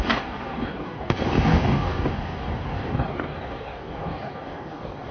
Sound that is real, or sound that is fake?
fake